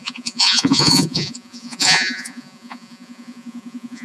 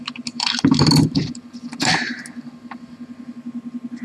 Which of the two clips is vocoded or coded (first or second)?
first